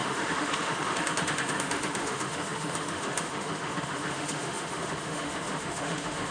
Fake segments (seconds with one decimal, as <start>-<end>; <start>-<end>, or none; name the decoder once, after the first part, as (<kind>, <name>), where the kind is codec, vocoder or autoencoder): 0.0-6.3 (autoencoder, DAC-VAE)